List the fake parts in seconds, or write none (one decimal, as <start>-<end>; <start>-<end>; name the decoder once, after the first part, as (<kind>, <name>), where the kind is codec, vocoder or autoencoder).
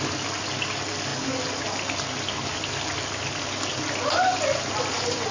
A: none